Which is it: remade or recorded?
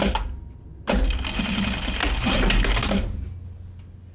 recorded